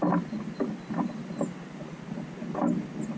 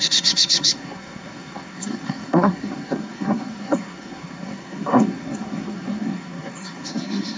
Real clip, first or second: first